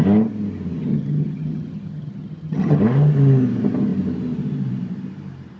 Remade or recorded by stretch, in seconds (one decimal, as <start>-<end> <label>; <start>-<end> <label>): 0.0-0.9 recorded; 0.9-2.8 remade; 2.8-5.6 recorded